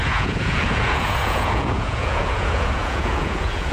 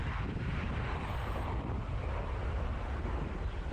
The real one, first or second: second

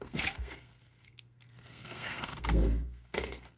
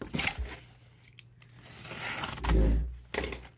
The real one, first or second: second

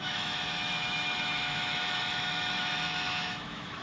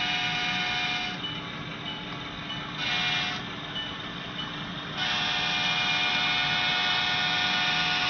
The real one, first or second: second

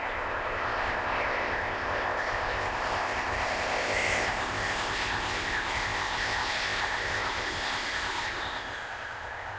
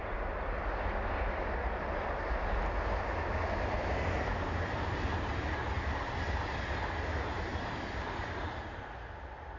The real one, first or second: second